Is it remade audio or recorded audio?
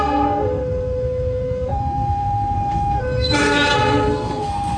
remade